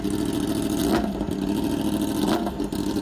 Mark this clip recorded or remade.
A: recorded